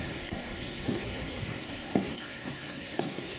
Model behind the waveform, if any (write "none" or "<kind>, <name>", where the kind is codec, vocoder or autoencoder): codec, SNAC